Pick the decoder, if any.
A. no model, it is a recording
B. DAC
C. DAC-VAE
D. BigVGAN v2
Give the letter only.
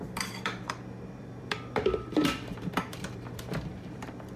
D